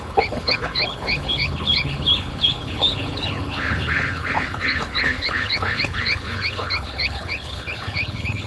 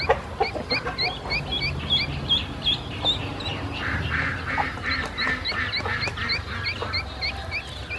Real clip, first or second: second